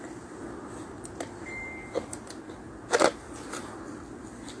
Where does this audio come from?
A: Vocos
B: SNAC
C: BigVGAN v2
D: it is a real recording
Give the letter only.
D